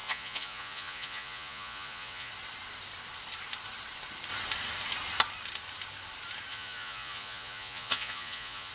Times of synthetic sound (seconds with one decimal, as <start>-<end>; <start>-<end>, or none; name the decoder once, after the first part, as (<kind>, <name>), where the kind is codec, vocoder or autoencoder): 0.0-2.3 (vocoder, Vocos); 6.5-8.7